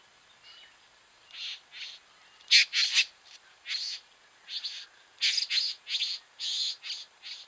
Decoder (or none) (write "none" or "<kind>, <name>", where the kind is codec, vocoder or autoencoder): none